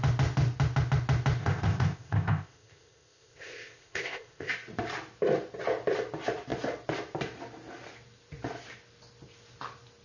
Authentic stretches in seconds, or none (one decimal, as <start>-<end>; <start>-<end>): 0.0-1.4; 4.5-10.0